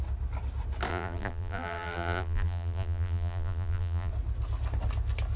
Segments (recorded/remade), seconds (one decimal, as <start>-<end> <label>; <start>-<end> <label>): 0.0-0.9 recorded; 0.9-4.1 remade; 4.1-5.4 recorded